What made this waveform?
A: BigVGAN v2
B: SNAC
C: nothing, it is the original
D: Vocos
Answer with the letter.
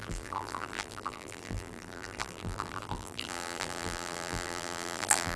A